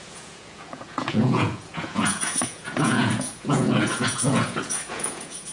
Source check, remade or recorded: remade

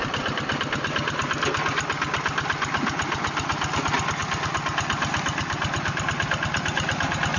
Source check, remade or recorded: recorded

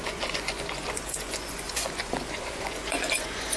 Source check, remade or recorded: remade